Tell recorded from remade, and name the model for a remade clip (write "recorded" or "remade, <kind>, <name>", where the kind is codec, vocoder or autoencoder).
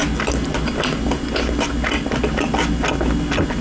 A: recorded